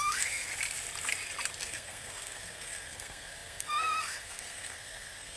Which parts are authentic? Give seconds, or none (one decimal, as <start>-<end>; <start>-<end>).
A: 0.5-1.6